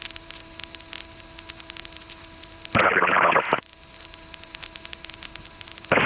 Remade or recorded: recorded